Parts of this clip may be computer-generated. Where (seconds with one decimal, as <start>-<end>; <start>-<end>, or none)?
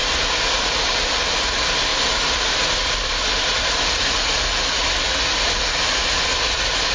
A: none